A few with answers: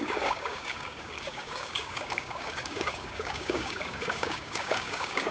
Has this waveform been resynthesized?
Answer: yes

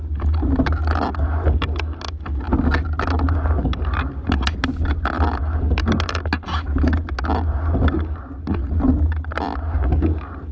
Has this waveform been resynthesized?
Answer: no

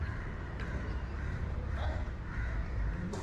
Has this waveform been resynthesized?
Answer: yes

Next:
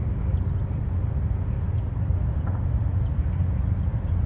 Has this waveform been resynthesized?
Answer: no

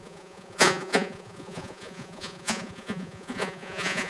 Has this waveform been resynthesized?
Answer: yes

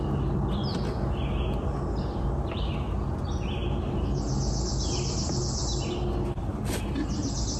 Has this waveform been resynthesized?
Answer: no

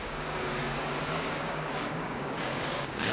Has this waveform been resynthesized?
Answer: yes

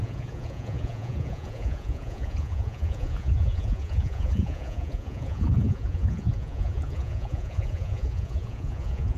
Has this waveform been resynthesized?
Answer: yes